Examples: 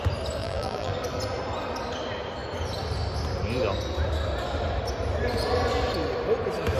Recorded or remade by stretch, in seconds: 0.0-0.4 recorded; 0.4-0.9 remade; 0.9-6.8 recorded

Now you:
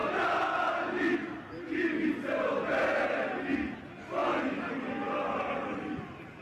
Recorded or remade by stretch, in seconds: 0.0-3.8 recorded; 3.8-6.4 remade

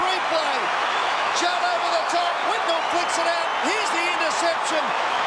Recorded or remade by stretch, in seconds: 0.0-0.8 recorded; 0.8-2.3 remade; 2.3-4.8 recorded; 4.8-5.3 remade

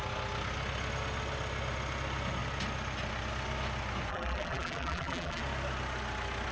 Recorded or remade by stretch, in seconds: 0.0-4.1 recorded; 4.1-5.4 remade; 5.4-6.5 recorded